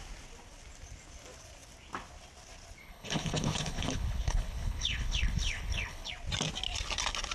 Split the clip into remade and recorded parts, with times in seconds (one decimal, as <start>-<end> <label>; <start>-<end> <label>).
0.0-2.8 recorded; 2.8-6.1 remade; 6.1-7.3 recorded